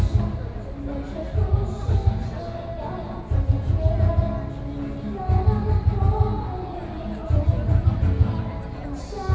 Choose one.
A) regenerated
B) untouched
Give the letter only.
B